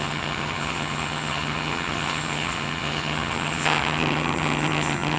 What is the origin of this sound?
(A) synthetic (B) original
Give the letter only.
A